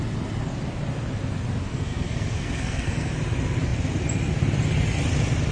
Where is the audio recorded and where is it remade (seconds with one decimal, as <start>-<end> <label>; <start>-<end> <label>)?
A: 0.0-1.7 recorded; 1.7-3.1 remade; 3.1-5.5 recorded